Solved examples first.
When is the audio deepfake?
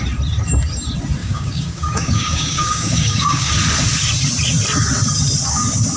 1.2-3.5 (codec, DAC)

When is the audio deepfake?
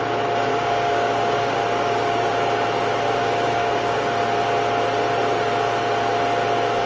0.5-2.3 (codec, DAC); 3.2-4.2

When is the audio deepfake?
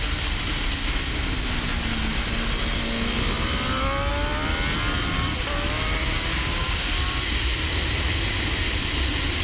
6.0-6.9 (codec, DAC)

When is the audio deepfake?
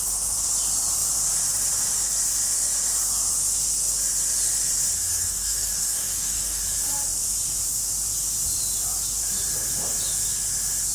5.1-6.6 (codec, DAC)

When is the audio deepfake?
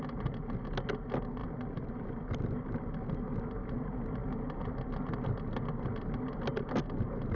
none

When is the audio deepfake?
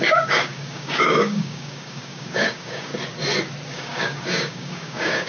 0.0-2.9 (codec, DAC); 3.7-5.3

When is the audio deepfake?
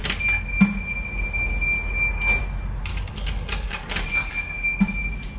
2.9-4.8 (codec, DAC)